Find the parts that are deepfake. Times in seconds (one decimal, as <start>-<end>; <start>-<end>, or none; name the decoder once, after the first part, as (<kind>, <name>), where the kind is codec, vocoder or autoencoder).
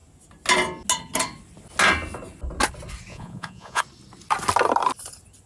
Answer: 3.1-3.8 (vocoder, Vocos)